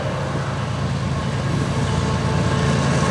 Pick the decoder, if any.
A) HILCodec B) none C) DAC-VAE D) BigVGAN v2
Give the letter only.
B